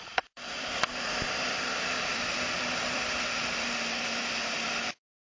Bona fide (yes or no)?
no